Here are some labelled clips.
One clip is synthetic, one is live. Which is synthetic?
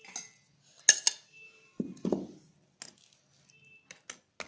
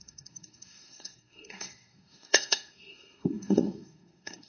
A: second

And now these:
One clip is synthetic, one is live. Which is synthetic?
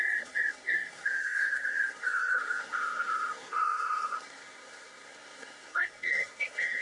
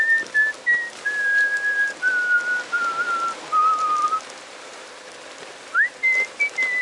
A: first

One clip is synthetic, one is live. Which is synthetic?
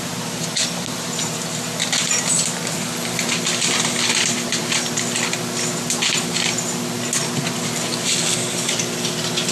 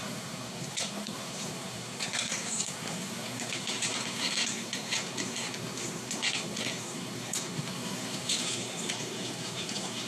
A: second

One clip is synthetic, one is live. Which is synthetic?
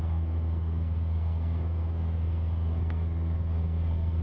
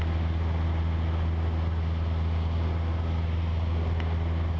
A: first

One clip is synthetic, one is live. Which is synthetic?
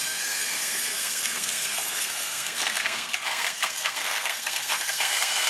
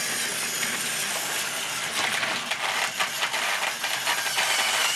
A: first